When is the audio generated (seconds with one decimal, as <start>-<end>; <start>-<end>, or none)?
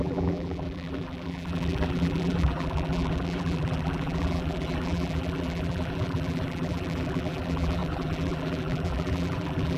0.0-9.8